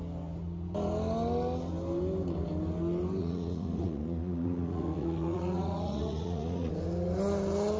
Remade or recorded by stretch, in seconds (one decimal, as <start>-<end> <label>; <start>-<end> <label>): 0.0-3.2 recorded; 3.2-6.7 remade; 6.7-7.8 recorded